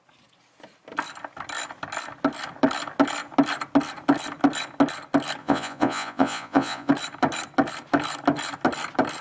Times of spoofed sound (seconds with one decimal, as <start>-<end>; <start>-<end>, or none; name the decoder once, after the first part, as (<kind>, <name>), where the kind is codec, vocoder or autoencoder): 5.4-6.9 (vocoder, Vocos)